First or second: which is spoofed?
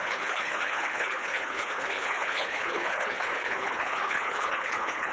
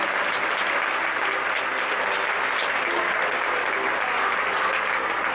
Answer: first